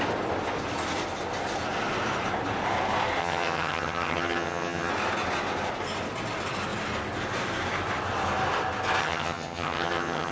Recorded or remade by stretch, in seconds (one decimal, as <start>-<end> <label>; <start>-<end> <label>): 0.0-3.2 recorded; 3.2-4.9 remade; 4.9-9.0 recorded; 9.0-10.3 remade

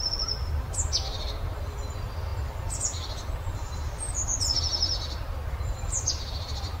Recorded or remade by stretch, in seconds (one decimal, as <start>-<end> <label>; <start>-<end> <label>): 0.0-6.8 recorded

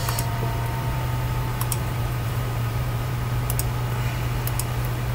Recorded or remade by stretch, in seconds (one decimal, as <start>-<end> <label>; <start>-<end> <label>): 0.0-3.1 remade; 3.1-5.1 recorded

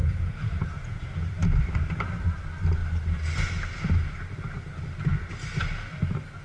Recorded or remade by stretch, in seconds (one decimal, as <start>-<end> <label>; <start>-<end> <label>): 0.0-1.0 remade; 1.0-6.4 recorded

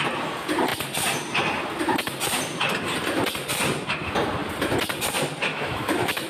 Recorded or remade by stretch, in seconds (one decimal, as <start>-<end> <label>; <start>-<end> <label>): 0.0-5.5 recorded; 5.5-6.3 remade

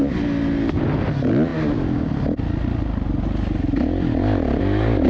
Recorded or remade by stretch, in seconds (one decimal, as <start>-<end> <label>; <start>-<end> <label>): 0.0-5.1 recorded